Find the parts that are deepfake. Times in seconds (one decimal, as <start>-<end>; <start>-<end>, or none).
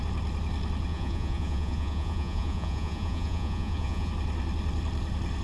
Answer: 0.9-4.1